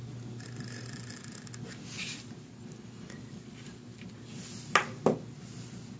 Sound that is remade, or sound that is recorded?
recorded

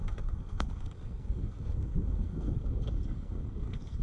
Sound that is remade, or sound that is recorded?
remade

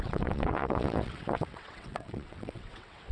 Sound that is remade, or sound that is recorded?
remade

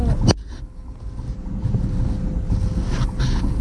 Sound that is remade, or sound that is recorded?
recorded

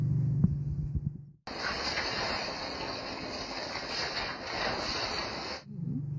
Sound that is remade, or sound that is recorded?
recorded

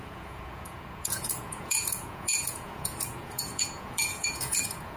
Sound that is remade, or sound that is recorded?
remade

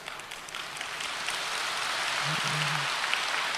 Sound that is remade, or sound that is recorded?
recorded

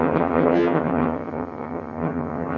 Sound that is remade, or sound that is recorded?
remade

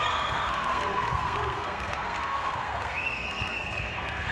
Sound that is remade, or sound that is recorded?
remade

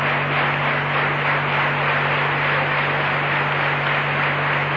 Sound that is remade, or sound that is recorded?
recorded